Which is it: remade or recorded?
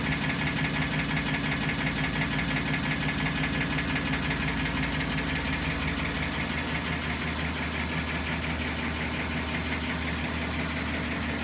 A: recorded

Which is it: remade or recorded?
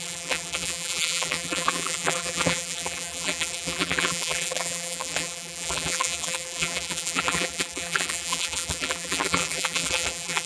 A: remade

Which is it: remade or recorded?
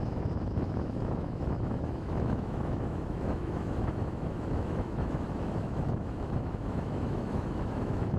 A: remade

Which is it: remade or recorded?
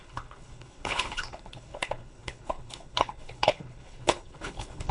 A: remade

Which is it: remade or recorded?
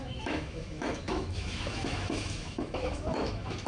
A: remade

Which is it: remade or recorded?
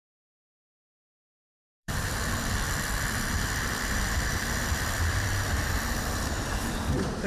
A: remade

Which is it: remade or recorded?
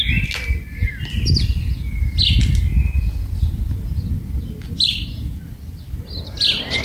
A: recorded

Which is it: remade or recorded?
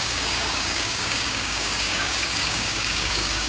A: remade